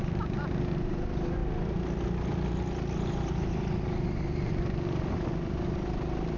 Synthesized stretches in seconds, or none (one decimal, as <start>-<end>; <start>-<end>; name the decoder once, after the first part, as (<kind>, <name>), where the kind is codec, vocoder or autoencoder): none

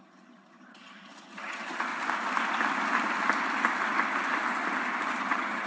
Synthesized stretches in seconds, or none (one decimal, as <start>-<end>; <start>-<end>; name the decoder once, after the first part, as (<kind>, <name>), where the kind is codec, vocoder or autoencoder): 0.0-1.9 (vocoder, HiFi-GAN); 5.2-5.7

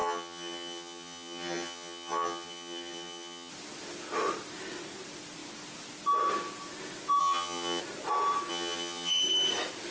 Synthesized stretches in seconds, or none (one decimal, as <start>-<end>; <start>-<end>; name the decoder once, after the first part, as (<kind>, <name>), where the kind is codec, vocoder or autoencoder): 0.0-3.5 (vocoder, HiFi-GAN); 7.2-7.8; 8.5-9.2

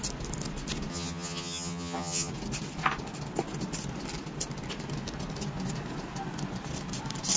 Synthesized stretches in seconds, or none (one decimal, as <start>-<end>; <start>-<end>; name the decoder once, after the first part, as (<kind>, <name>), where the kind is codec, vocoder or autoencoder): 0.9-2.3 (vocoder, HiFi-GAN)

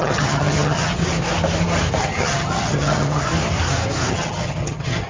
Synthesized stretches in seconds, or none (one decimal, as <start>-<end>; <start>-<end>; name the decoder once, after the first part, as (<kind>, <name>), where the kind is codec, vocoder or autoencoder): 0.0-1.0 (vocoder, HiFi-GAN); 2.0-3.3; 4.1-5.1